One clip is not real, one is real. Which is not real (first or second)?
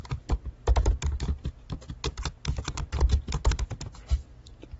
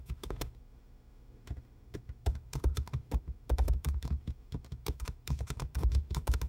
second